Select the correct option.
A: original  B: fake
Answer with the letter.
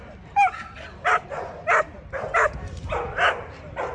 B